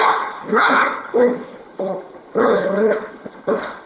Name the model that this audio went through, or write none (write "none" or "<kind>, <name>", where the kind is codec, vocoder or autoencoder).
codec, HILCodec